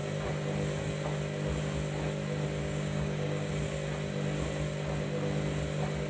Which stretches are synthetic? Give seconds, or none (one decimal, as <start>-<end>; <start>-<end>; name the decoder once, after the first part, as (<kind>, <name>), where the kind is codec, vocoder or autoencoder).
2.6-3.5 (codec, DAC)